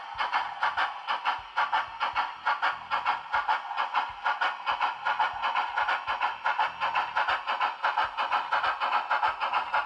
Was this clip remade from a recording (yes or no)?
no